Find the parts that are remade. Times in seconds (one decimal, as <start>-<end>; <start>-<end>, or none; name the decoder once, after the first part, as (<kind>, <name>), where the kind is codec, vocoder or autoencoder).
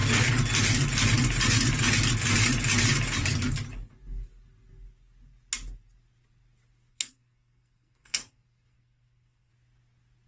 6.9-9.5 (codec, SNAC)